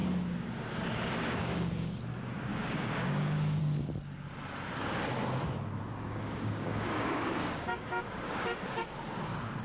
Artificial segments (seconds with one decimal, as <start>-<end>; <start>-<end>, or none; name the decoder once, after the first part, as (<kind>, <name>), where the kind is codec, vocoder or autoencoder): 0.0-2.0 (codec, DAC); 2.5-3.6; 5.9-8.8